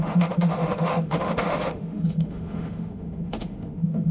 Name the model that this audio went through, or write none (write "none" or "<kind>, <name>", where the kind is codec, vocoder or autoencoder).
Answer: autoencoder, DAC-VAE